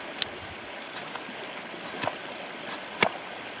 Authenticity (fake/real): real